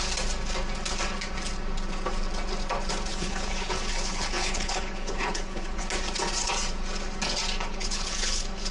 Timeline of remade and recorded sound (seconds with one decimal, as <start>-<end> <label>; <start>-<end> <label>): 0.0-3.1 recorded; 3.1-5.8 remade; 5.8-7.7 recorded; 7.7-8.7 remade